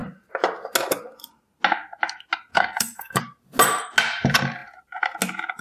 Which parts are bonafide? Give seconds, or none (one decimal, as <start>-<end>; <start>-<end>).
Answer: 0.0-2.5; 3.2-5.6